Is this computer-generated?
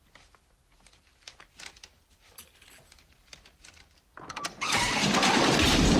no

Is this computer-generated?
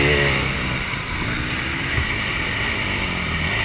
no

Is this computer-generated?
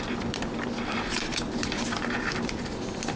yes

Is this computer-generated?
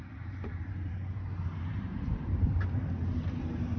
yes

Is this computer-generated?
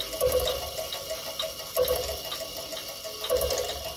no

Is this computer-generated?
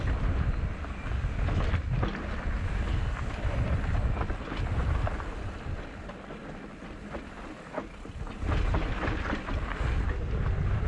no